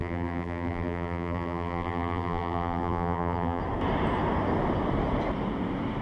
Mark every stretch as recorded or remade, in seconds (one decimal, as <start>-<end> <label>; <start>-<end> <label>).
0.0-3.6 remade; 3.6-6.0 recorded